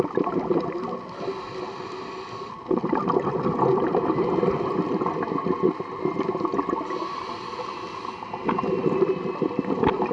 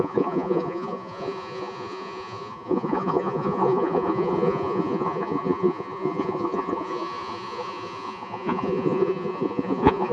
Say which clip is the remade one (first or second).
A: second